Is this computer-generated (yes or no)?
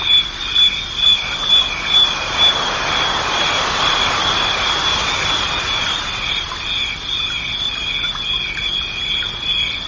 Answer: no